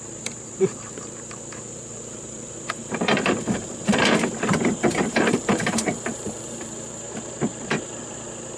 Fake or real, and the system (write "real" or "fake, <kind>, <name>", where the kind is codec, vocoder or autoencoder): fake, vocoder, BigVGAN v2